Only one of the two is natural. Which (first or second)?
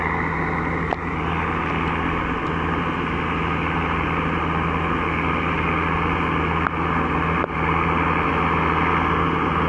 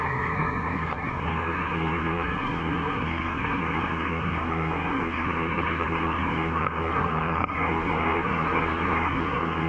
first